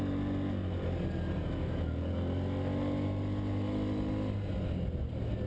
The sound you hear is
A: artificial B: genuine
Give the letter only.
B